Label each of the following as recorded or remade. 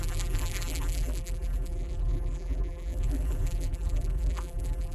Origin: remade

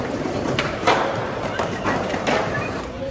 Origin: remade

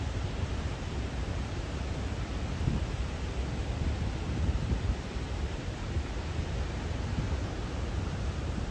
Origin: remade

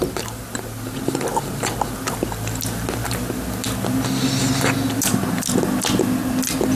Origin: recorded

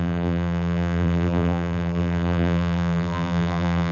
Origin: remade